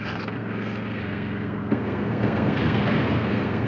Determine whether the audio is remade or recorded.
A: remade